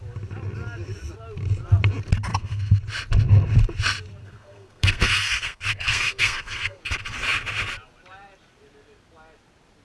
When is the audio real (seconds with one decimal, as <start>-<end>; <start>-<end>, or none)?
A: 0.0-2.3; 2.8-4.2; 6.8-9.8